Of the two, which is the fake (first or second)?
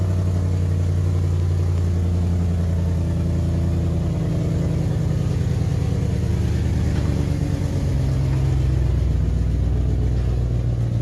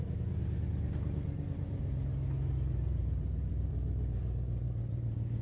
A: second